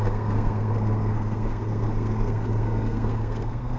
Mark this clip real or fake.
fake